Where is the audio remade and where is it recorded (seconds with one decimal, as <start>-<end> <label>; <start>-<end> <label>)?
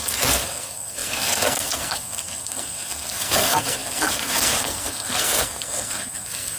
0.0-6.6 remade